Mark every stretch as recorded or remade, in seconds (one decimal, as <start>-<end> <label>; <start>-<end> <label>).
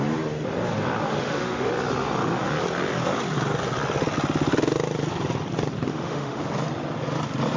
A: 0.0-1.1 recorded; 1.1-1.7 remade; 1.7-5.9 recorded; 5.9-6.4 remade; 6.4-7.6 recorded